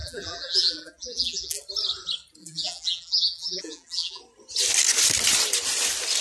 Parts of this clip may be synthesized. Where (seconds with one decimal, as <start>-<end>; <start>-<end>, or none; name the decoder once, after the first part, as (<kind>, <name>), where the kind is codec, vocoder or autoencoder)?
0.0-1.6 (vocoder, BigVGAN v2); 2.4-4.2